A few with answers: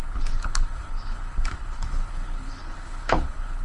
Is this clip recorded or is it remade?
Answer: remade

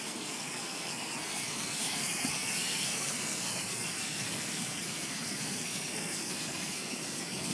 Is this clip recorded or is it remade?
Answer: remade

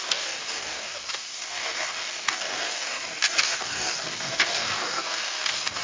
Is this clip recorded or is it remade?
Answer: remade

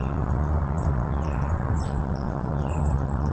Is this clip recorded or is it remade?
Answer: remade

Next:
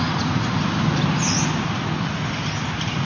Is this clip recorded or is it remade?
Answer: recorded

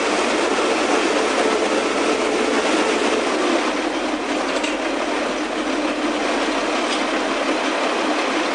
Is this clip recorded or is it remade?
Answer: recorded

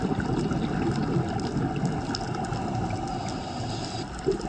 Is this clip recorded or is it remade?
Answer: recorded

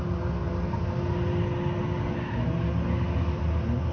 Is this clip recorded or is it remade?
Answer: recorded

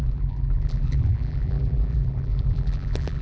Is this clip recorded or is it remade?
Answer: remade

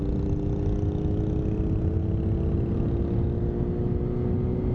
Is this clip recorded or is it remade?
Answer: recorded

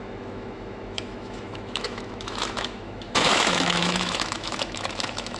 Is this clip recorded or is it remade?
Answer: remade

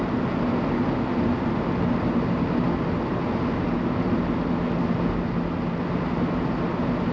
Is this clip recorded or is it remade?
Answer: recorded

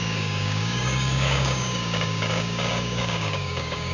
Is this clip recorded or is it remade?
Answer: remade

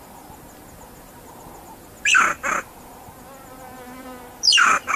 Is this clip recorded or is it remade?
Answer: recorded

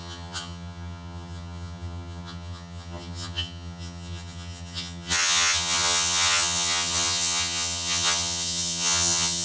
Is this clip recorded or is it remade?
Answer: remade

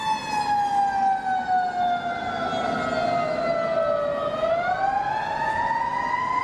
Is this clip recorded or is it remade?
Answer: recorded